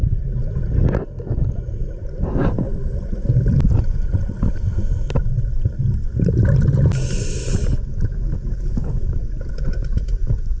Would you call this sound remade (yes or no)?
no